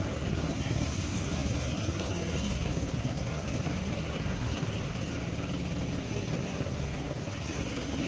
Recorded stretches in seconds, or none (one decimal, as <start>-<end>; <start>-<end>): 5.1-6.0